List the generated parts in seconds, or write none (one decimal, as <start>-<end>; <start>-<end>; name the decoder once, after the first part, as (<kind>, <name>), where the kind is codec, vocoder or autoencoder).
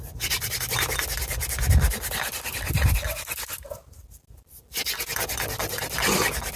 none